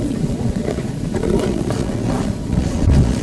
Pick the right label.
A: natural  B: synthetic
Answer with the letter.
B